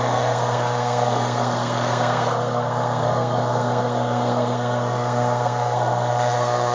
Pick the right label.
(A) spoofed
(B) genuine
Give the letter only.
A